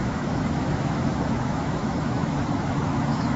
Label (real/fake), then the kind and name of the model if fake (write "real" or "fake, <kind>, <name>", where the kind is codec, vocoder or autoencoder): fake, autoencoder, DAC-VAE